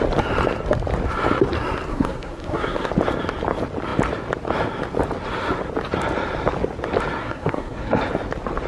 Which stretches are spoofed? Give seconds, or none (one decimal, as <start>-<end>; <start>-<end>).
1.9-2.9; 7.2-8.0